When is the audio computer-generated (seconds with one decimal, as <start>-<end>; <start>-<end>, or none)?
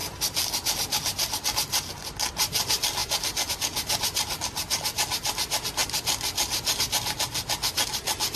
none